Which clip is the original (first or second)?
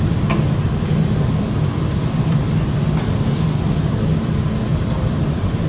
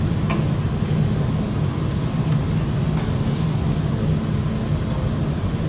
second